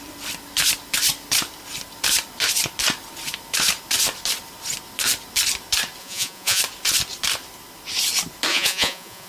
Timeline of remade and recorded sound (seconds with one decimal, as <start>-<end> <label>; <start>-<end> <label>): 0.0-6.0 recorded; 6.0-6.6 remade; 6.6-8.5 recorded; 8.5-9.3 remade

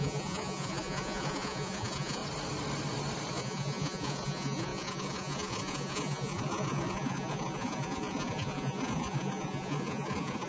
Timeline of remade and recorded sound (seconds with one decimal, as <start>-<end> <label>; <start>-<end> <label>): 0.0-2.2 remade; 2.2-3.3 recorded; 3.3-10.5 remade